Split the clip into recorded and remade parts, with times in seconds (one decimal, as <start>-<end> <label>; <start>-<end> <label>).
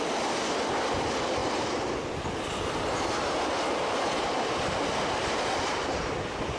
0.0-6.6 recorded